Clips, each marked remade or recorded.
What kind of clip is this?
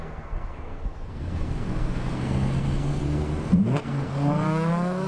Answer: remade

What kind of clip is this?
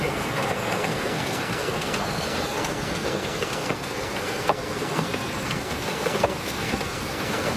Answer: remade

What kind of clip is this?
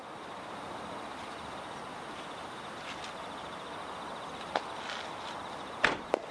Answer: recorded